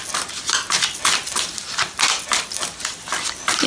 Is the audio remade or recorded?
recorded